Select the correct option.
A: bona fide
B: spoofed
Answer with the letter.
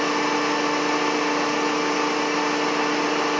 A